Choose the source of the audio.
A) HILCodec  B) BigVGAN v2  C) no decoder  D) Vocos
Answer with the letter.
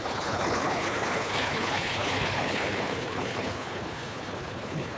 A